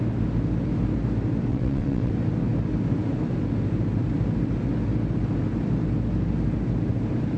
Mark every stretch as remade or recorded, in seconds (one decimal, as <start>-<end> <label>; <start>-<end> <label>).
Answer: 0.0-1.5 recorded; 1.5-2.1 remade; 2.1-7.4 recorded